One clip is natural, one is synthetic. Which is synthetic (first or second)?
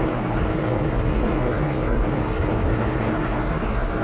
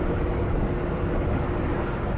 first